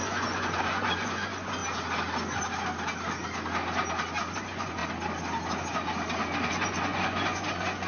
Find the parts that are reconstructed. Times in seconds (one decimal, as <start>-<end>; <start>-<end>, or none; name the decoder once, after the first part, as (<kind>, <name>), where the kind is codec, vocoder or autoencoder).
0.0-1.6 (vocoder, Vocos); 4.3-4.8; 6.5-7.9

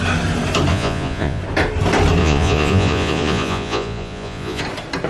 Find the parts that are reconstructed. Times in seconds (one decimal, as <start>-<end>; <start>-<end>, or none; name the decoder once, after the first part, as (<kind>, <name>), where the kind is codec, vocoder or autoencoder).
0.7-1.4 (vocoder, Vocos); 2.2-4.6

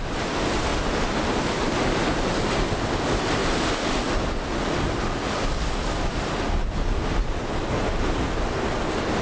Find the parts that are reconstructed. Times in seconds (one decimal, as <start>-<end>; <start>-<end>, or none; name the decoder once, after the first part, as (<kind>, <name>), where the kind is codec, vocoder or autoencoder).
none

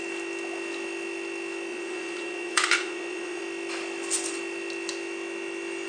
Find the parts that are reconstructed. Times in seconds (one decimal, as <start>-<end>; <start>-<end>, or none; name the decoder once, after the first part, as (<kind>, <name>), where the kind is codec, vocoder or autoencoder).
1.7-3.4 (vocoder, Vocos)

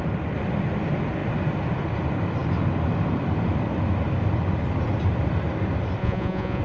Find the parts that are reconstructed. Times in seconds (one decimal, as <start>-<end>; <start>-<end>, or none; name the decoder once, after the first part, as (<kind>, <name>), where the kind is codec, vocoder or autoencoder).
6.0-6.6 (vocoder, Vocos)

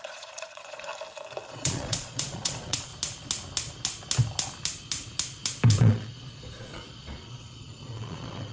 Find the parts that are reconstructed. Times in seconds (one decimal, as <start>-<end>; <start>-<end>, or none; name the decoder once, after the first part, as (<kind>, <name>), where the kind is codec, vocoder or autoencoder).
0.0-0.9 (vocoder, Vocos); 1.5-2.9; 5.7-8.5